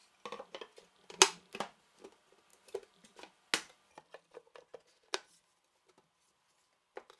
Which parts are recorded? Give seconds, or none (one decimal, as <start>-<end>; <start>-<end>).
0.0-7.2